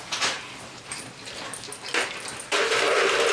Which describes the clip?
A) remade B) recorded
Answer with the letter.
B